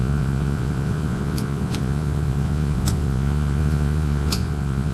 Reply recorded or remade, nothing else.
remade